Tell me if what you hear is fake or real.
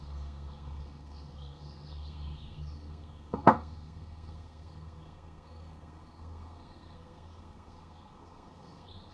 fake